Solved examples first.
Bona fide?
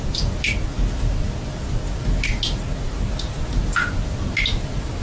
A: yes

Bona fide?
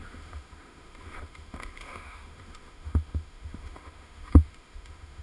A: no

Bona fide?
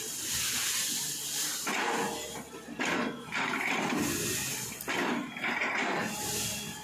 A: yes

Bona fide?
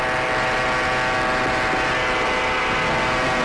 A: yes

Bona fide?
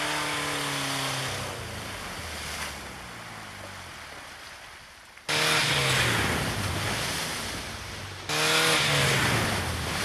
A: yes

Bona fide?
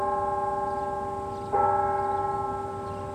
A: yes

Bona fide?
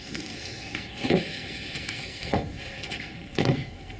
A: no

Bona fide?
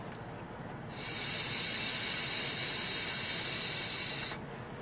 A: yes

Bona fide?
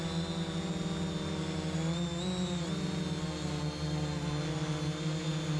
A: yes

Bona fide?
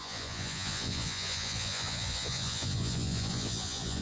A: no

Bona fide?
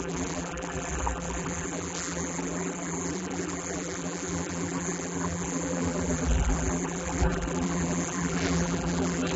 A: no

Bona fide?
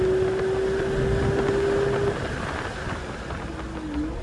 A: yes